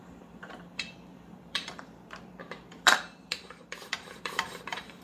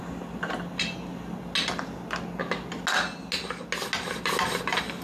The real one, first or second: second